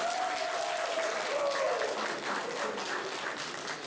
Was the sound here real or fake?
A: real